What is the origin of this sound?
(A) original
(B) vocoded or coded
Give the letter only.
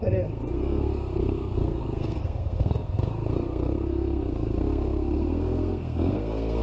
B